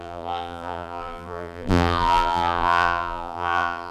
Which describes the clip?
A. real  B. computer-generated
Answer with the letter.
B